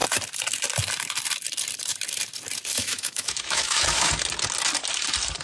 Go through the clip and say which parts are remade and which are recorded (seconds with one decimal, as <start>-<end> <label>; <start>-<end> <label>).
0.0-2.7 recorded; 2.7-4.1 remade; 4.1-5.4 recorded

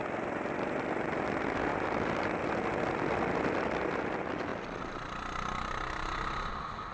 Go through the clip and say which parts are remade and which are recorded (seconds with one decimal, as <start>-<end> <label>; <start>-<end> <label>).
0.0-6.9 recorded

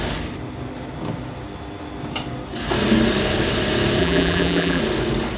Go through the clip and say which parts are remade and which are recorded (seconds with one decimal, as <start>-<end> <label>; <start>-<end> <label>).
0.0-4.0 recorded; 4.0-4.8 remade; 4.8-5.4 recorded